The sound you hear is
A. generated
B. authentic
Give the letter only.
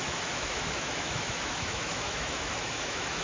A